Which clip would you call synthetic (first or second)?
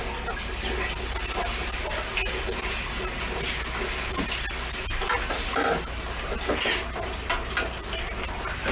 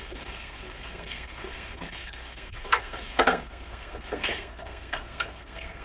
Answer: second